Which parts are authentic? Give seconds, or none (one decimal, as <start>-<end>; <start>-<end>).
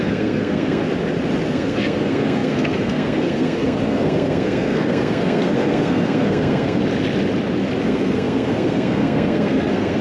0.8-1.5; 6.8-7.8